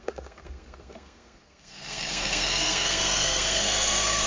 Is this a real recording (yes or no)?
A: no